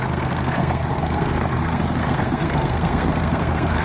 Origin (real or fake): fake